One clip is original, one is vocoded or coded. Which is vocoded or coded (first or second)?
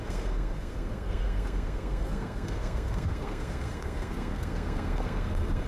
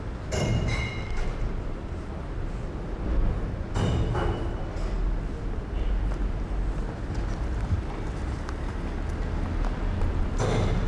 first